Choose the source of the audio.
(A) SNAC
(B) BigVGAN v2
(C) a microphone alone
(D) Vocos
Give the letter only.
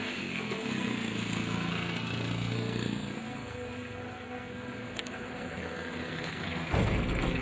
A